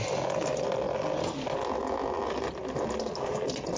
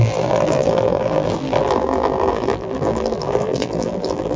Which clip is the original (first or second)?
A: first